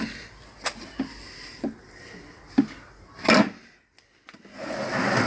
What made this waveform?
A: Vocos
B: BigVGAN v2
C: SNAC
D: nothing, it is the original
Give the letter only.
D